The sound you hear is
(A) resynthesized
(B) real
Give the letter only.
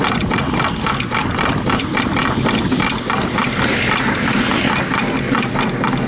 B